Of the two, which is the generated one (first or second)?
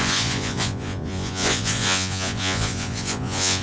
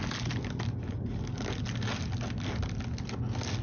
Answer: first